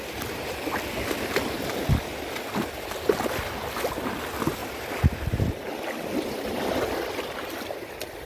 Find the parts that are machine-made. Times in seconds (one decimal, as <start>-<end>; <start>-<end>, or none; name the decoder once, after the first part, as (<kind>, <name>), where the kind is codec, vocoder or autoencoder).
4.6-6.9 (vocoder, BigVGAN v2)